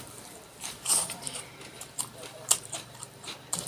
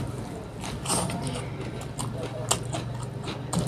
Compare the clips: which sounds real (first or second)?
second